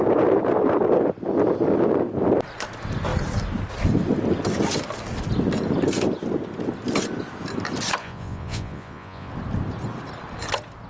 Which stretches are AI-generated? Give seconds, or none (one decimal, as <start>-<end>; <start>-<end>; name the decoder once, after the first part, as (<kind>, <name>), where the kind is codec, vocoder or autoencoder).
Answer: 8.0-9.3 (vocoder, Vocos)